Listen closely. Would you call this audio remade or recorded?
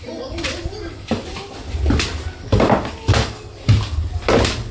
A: recorded